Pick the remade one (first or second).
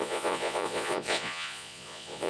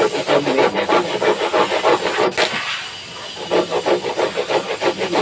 first